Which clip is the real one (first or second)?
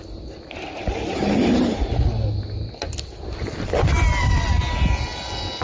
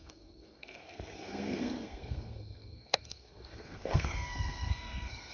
first